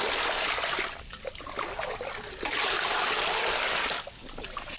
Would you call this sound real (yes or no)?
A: yes